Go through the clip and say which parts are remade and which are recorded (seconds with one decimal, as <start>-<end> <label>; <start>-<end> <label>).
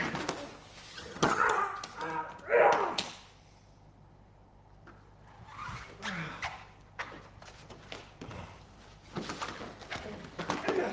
0.0-0.9 recorded; 0.9-1.5 remade; 1.5-10.9 recorded